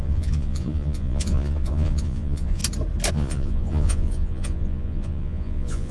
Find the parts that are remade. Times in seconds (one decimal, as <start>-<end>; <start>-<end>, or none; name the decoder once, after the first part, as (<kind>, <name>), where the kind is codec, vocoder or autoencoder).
0.0-2.6 (vocoder, Vocos); 3.1-5.9